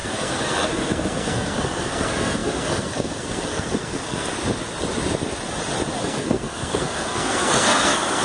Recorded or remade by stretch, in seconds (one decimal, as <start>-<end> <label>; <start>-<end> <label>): 0.0-4.3 remade; 4.3-6.0 recorded; 6.0-8.2 remade